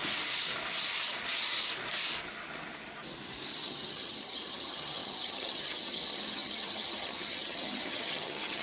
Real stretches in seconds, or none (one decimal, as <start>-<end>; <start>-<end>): 0.0-3.5